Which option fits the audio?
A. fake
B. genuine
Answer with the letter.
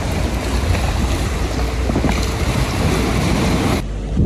B